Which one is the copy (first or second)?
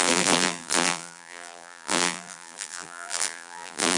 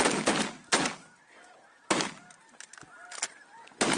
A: first